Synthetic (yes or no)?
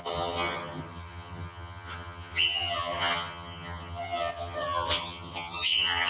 yes